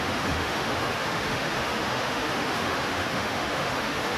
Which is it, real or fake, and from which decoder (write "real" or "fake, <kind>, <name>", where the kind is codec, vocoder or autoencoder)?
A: fake, autoencoder, DAC-VAE